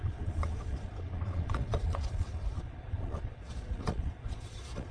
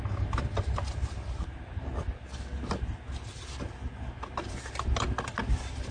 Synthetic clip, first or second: first